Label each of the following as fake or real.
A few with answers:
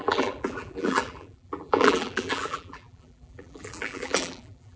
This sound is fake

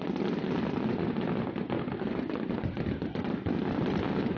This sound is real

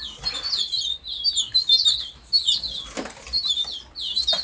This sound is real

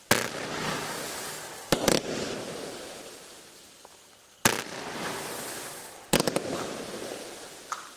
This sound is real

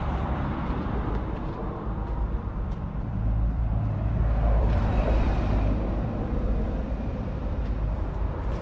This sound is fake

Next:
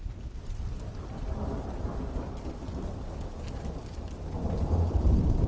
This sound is real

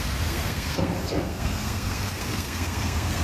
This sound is fake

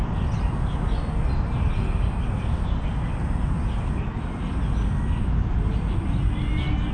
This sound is real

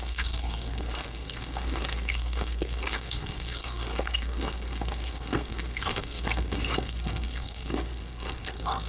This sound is fake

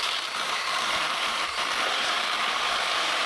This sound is fake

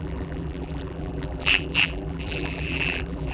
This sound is fake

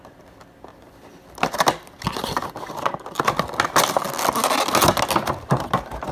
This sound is real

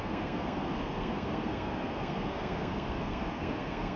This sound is fake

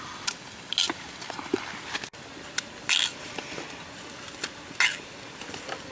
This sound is real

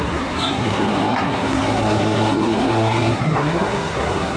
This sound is fake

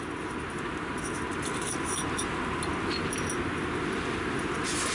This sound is real